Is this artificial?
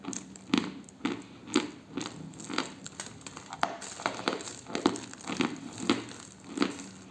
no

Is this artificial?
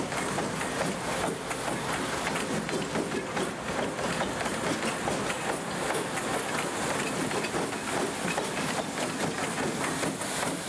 no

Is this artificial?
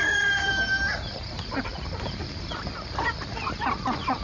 no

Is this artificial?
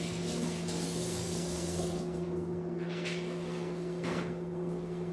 yes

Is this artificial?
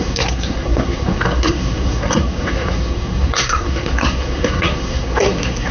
yes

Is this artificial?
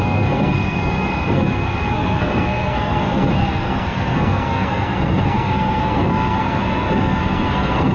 yes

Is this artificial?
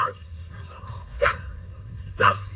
yes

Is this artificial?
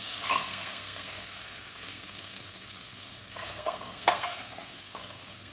yes